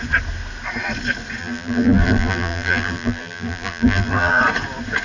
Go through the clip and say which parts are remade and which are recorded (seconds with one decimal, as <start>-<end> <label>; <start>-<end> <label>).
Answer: 0.0-1.4 recorded; 1.4-4.4 remade; 4.4-5.0 recorded